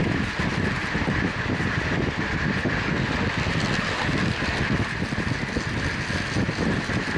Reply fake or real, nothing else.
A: real